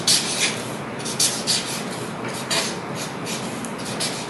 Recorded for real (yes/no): no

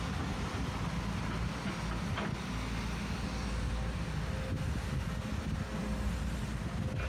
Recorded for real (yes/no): yes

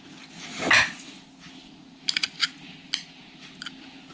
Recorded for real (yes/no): yes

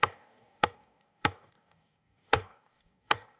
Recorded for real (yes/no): no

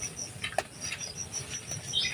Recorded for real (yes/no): yes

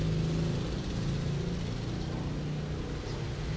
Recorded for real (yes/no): yes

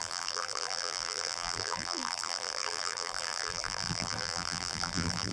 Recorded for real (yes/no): no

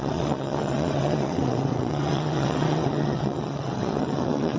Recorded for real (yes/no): no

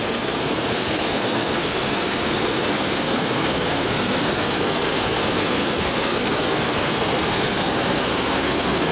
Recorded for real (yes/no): no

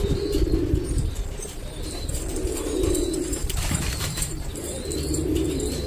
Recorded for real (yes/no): no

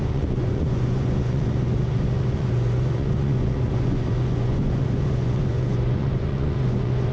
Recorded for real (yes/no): no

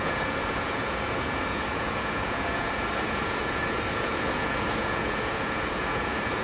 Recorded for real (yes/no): no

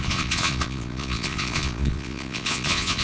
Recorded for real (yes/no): no